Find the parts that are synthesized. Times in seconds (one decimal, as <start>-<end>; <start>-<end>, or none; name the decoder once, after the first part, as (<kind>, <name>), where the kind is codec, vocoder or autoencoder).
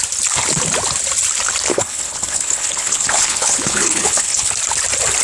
1.7-4.5 (codec, HILCodec)